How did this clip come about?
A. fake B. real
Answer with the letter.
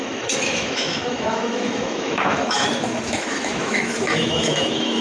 A